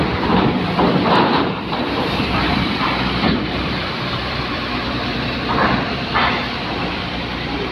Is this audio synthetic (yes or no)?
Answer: yes